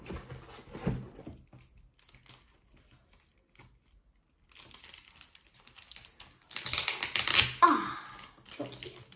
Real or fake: real